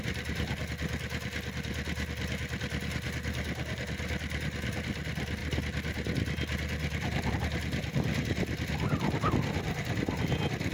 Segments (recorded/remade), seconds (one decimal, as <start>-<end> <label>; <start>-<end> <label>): 0.0-10.7 recorded